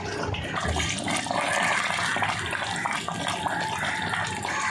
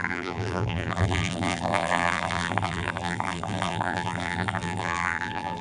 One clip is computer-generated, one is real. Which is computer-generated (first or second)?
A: second